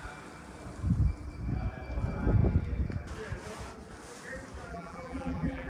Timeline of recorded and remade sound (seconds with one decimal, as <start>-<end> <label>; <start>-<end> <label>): 0.0-4.7 recorded; 4.7-5.7 remade